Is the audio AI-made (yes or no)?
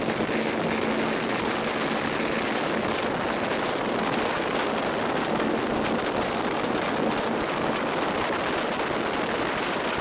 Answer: no